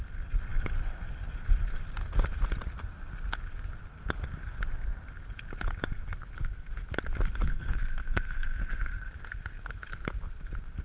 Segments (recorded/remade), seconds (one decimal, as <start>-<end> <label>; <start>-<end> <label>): 0.0-7.5 recorded; 7.5-9.1 remade; 9.1-10.8 recorded